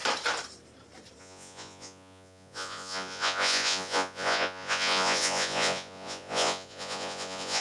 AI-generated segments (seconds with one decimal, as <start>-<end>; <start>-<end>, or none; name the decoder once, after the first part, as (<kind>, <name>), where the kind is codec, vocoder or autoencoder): 1.2-7.6 (vocoder, Vocos)

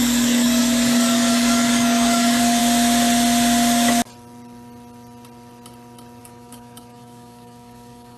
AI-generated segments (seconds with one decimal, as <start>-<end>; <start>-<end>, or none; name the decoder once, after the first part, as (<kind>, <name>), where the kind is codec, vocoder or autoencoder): 0.0-2.6 (codec, DAC); 6.2-8.2

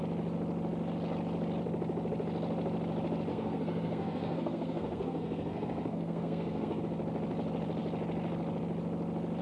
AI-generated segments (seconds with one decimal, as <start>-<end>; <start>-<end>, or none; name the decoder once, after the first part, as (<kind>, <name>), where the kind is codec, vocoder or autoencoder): 3.3-6.8 (codec, SNAC)